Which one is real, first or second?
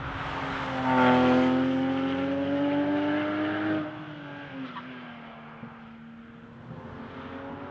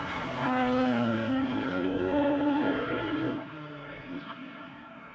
first